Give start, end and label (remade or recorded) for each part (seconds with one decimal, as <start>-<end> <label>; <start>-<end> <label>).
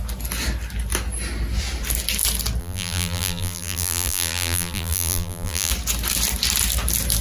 0.0-2.6 recorded; 2.6-5.7 remade; 5.7-7.2 recorded